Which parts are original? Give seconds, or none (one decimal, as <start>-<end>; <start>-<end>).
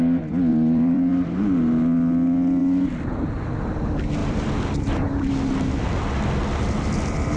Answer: 0.0-0.5; 1.1-4.2; 5.3-7.4